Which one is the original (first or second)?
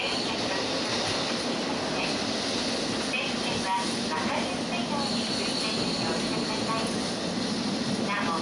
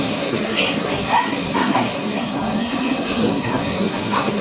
first